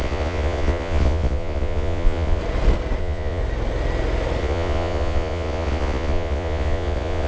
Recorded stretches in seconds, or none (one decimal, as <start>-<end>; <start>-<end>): 2.4-3.0; 3.4-4.4